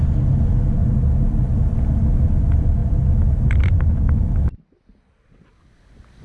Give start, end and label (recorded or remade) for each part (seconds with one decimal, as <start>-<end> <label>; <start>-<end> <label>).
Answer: 0.0-6.2 recorded